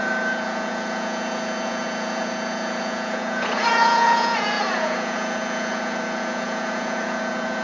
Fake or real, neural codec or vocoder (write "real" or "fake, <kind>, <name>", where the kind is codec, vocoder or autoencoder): fake, vocoder, Vocos